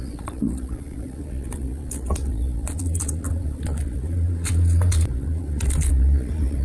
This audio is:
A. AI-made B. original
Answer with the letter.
A